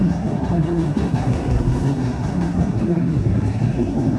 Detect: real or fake fake